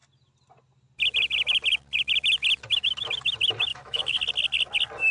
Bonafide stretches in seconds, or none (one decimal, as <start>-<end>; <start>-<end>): 0.0-3.7; 4.2-5.1